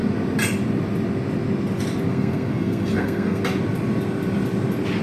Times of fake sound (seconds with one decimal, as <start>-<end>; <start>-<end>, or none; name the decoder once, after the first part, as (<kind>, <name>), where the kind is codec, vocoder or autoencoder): 2.1-3.4 (codec, SNAC)